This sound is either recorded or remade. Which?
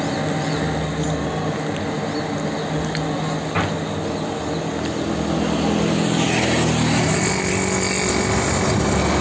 recorded